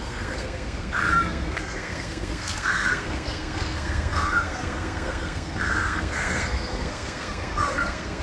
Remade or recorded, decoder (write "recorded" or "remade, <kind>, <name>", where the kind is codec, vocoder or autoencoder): remade, codec, SNAC